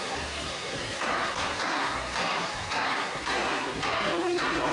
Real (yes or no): no